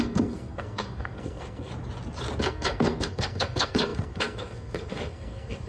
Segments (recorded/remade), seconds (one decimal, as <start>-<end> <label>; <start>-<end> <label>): 0.0-1.7 remade; 1.7-2.4 recorded; 2.4-5.7 remade